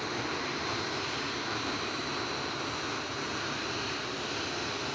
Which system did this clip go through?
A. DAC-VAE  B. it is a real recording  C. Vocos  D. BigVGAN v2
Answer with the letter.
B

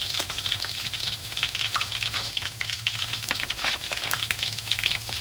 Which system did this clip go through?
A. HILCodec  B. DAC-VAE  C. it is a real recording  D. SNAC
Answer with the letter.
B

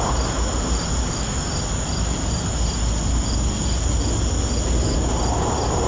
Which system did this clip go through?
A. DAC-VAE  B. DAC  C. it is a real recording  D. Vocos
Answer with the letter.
C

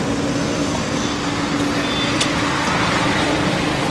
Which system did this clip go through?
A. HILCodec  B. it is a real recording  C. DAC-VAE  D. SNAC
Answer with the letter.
B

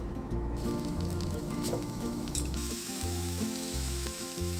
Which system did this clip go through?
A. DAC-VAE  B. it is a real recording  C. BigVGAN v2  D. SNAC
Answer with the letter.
A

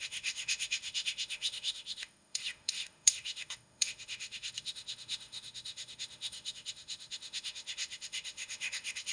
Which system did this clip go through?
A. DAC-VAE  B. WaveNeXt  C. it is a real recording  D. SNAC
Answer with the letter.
A